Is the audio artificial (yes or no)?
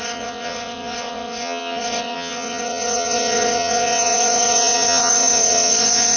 yes